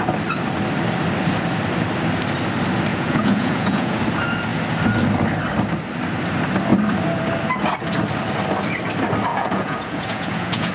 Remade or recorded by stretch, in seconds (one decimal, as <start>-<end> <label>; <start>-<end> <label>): 0.0-2.9 recorded; 2.9-4.0 remade; 4.0-9.3 recorded; 9.3-10.7 remade